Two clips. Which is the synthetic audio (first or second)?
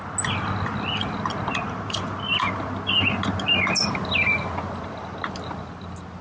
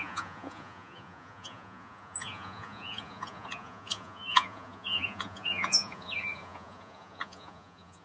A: second